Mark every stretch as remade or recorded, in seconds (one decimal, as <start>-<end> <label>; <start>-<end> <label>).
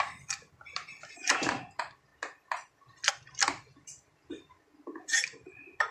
0.0-2.1 remade; 2.1-3.1 recorded; 3.1-5.9 remade